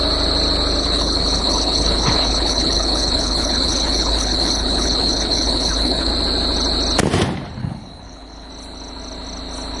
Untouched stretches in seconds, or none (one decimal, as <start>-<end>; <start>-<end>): 0.0-0.8; 6.1-7.6; 8.5-9.8